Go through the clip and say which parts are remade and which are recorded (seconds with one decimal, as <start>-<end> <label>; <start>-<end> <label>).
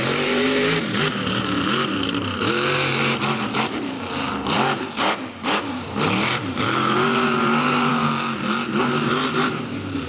0.0-7.9 remade; 7.9-8.8 recorded; 8.8-10.1 remade